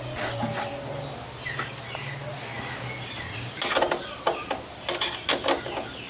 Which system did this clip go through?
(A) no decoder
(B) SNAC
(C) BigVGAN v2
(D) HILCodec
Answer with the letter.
A